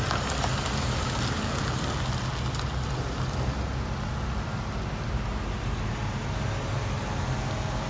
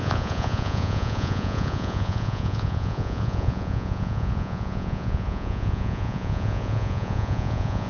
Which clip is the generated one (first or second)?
second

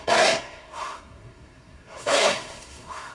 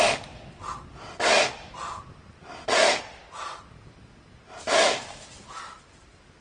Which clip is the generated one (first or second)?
first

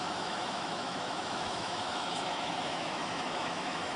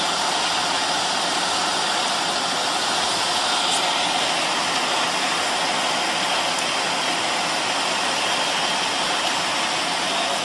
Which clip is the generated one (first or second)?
first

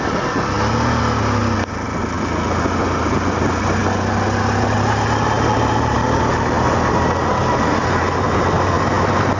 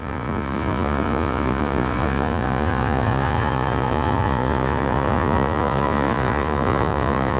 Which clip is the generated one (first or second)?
second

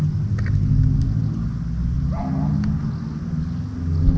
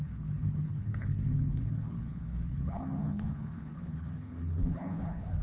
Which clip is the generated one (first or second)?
second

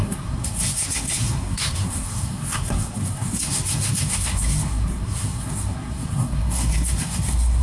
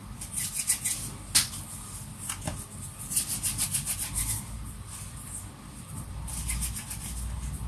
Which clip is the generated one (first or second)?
first